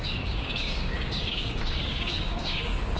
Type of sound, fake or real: fake